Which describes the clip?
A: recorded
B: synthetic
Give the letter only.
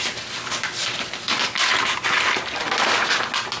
A